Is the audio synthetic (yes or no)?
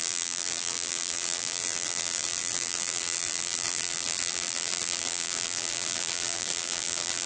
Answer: yes